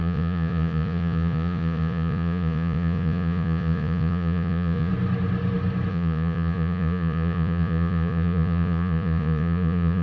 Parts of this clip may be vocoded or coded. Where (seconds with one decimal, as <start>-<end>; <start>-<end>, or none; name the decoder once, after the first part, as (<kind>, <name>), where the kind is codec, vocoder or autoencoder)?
0.0-4.9 (vocoder, Vocos); 5.9-10.0